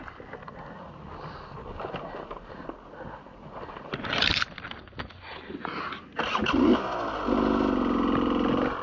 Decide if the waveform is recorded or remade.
recorded